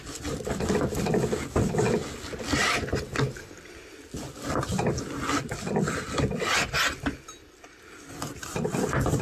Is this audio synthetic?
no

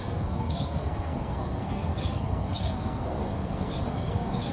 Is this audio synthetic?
yes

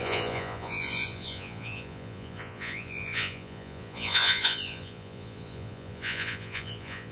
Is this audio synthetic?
yes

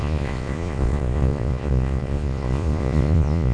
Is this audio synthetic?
yes